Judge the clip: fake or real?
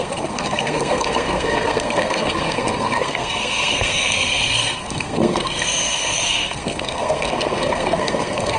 fake